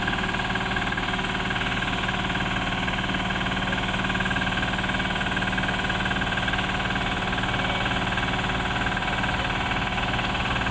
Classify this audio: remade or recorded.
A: recorded